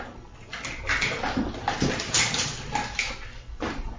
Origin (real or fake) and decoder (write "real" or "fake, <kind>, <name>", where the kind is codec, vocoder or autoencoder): real